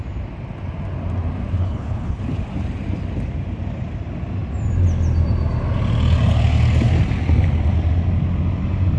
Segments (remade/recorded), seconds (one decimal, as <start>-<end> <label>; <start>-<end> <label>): 0.0-1.6 recorded; 1.6-2.2 remade; 2.2-9.0 recorded